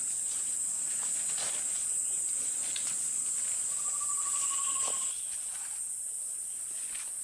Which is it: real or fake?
real